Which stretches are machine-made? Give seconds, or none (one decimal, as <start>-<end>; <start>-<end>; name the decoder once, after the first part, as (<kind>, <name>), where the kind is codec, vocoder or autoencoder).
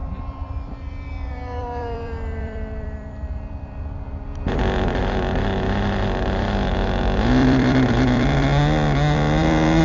0.0-4.5 (vocoder, BigVGAN v2); 7.4-9.8